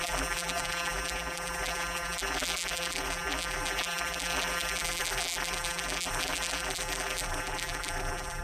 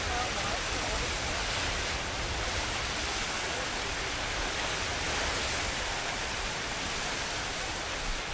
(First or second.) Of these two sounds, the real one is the second